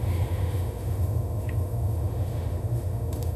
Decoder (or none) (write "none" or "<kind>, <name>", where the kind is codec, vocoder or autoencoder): autoencoder, DAC-VAE